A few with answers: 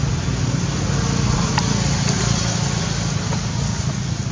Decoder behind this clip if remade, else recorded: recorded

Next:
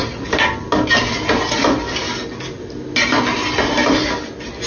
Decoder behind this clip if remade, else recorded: recorded